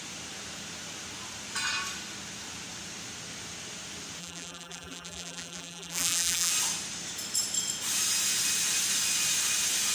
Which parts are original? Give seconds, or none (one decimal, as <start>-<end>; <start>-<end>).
0.0-4.2; 6.5-9.9